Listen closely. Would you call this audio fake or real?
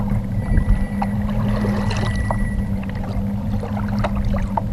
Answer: real